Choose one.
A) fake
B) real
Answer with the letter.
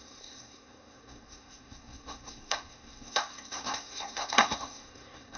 A